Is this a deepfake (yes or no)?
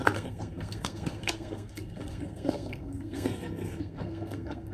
yes